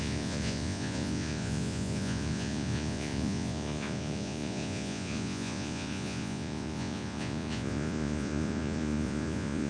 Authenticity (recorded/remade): remade